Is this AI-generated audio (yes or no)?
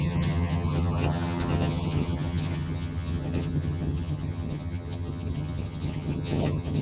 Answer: yes